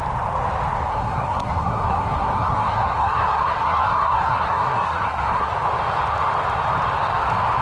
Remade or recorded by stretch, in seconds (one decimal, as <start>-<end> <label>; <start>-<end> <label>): 0.0-0.9 recorded; 0.9-5.5 remade; 5.5-7.6 recorded